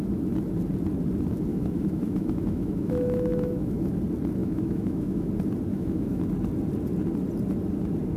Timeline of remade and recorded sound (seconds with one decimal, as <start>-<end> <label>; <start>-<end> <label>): 0.0-1.5 recorded; 1.5-4.0 remade; 4.0-4.4 recorded; 4.4-5.3 remade; 5.3-5.7 recorded; 5.7-6.3 remade; 6.3-8.2 recorded